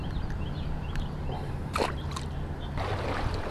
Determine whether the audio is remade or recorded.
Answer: remade